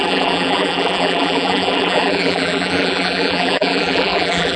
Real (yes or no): no